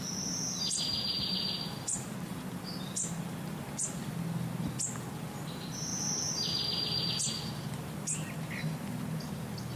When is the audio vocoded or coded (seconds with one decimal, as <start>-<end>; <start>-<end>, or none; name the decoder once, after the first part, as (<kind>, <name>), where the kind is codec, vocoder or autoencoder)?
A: none